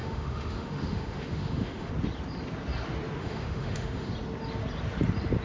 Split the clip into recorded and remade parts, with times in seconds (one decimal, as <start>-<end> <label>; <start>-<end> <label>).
0.0-1.9 remade; 1.9-3.2 recorded; 3.2-4.1 remade; 4.1-5.4 recorded